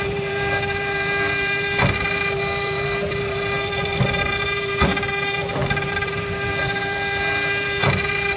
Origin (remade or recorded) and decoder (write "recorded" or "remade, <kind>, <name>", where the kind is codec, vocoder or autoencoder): remade, vocoder, BigVGAN v2